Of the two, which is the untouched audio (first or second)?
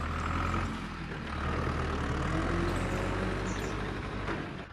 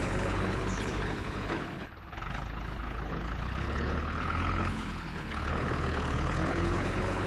first